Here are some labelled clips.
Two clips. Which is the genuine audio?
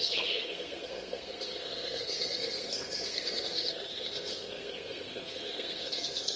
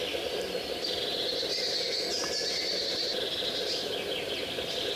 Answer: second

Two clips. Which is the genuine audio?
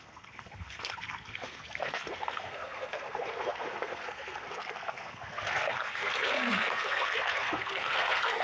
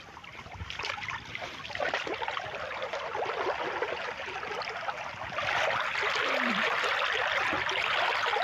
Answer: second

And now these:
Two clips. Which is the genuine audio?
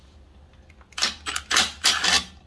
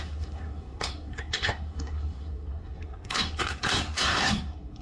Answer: first